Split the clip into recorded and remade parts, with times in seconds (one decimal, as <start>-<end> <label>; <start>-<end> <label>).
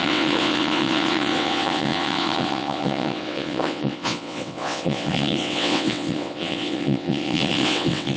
0.0-8.2 remade